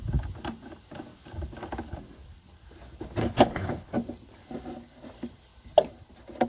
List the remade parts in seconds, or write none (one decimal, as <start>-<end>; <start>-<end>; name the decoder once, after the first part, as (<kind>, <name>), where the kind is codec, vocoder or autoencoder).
3.2-3.9 (codec, HILCodec)